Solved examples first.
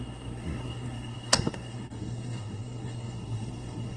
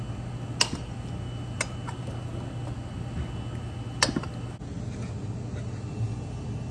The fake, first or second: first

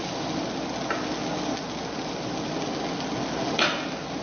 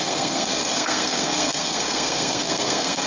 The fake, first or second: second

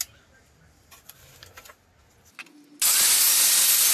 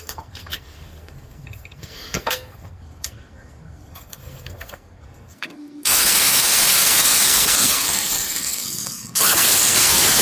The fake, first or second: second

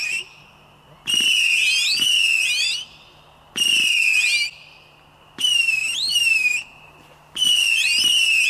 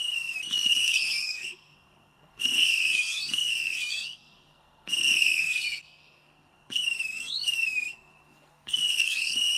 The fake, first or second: second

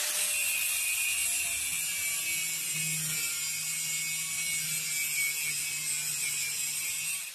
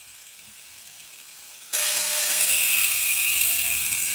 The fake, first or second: second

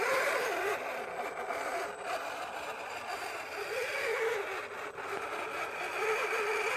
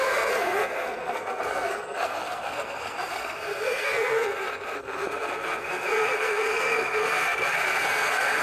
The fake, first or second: second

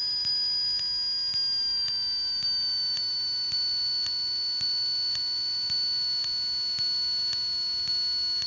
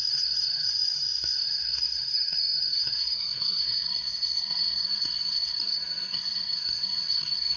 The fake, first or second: second